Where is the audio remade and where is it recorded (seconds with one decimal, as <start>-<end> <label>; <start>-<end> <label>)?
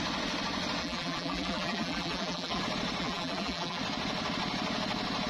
0.0-0.8 recorded; 0.8-2.6 remade; 2.6-3.0 recorded; 3.0-3.8 remade; 3.8-5.3 recorded